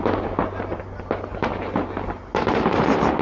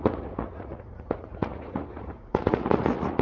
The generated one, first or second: second